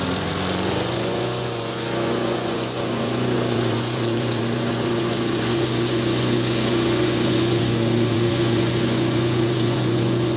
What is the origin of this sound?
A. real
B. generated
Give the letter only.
B